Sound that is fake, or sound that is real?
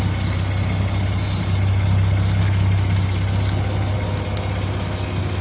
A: real